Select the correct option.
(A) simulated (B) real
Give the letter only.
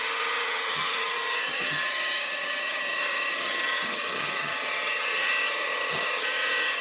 A